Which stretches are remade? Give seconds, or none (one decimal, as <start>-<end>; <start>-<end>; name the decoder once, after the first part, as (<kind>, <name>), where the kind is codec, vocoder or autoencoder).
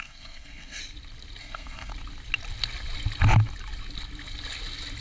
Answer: 0.0-0.8 (codec, SNAC); 1.4-1.9